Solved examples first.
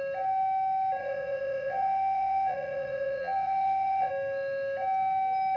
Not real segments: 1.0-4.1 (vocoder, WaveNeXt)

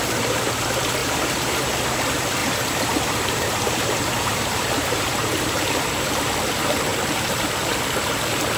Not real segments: 1.0-1.6 (vocoder, BigVGAN v2); 2.4-6.3

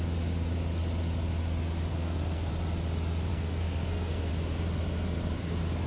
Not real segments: 1.9-2.5 (codec, SNAC); 3.3-4.3

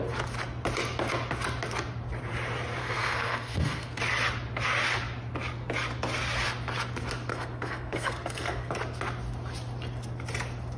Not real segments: 2.8-4.0 (codec, SNAC); 7.3-8.7

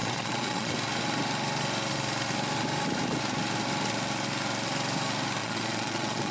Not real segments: 0.0-0.7 (vocoder, Vocos); 5.4-6.3

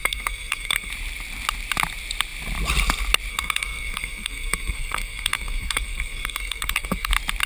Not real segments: 0.0-0.9 (codec, SNAC); 3.3-7.1

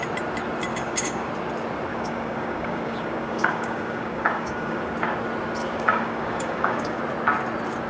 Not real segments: 0.7-1.3 (codec, DAC); 1.9-4.9; 5.6-7.0